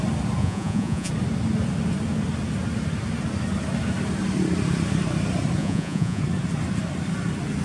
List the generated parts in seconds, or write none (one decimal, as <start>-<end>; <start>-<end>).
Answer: 0.4-1.1; 5.6-6.2